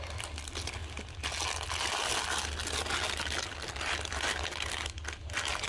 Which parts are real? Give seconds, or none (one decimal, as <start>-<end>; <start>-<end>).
0.0-5.7